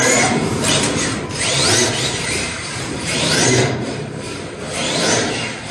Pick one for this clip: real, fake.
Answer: fake